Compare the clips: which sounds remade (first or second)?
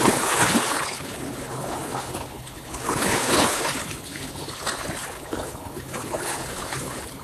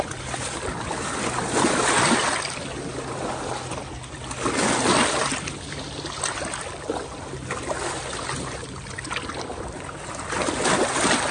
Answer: first